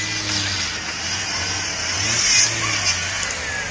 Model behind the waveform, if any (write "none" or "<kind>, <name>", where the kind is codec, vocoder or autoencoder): none